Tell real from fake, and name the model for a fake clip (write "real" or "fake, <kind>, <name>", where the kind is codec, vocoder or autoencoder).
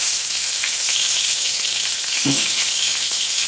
fake, autoencoder, DAC-VAE